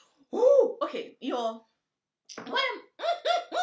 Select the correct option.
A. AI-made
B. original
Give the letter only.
B